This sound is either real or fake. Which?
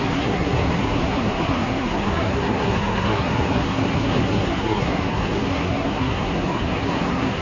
fake